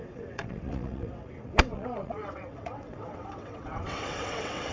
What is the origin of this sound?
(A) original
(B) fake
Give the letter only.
B